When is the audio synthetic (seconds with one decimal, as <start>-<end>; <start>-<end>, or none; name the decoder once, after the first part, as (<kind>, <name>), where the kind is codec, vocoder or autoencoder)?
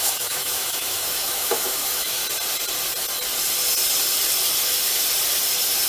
0.0-2.2 (autoencoder, DAC-VAE)